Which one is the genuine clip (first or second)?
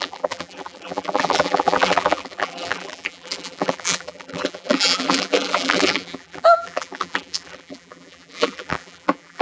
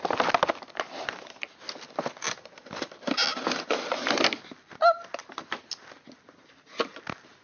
second